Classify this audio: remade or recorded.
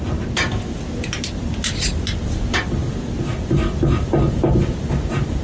recorded